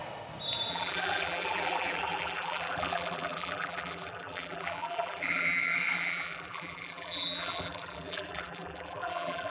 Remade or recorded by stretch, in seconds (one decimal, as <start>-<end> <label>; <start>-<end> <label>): 0.0-0.7 recorded; 0.7-9.5 remade